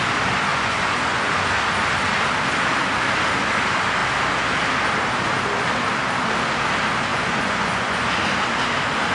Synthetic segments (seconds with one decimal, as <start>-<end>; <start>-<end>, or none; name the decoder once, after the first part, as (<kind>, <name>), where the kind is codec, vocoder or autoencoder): 0.5-1.3 (vocoder, Vocos); 7.1-8.1